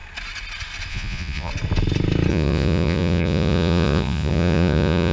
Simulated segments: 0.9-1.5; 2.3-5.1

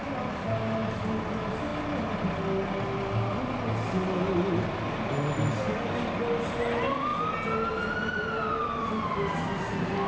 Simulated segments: none

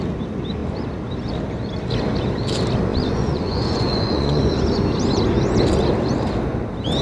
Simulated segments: 2.9-4.5